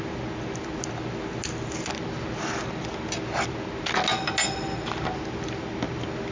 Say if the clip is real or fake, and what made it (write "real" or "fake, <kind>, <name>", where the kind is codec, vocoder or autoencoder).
real